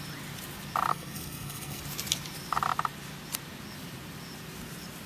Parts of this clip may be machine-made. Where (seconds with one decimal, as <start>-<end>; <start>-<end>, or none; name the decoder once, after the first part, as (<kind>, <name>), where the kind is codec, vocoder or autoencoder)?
0.9-1.8 (codec, SNAC)